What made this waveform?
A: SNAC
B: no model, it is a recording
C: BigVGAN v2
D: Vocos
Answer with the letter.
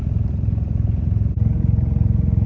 C